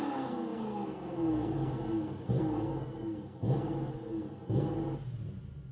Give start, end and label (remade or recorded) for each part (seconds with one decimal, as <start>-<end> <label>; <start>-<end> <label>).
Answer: 0.0-4.8 remade; 4.8-5.7 recorded